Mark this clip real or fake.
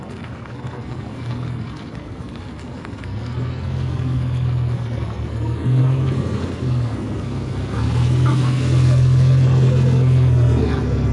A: fake